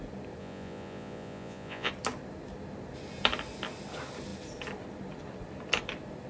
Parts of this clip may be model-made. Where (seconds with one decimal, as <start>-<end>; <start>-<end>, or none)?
0.4-1.9